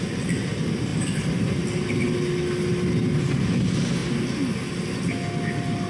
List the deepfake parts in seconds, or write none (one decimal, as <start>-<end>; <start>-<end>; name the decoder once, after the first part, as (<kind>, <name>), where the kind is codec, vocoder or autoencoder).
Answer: 0.9-1.6 (vocoder, BigVGAN v2)